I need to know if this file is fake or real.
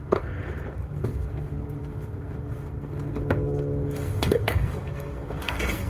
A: fake